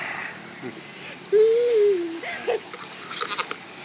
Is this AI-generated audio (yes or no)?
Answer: no